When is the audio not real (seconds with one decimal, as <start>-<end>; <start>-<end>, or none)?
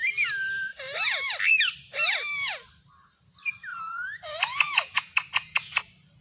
3.7-5.8